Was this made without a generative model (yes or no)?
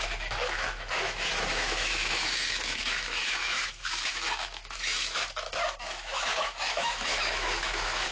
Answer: no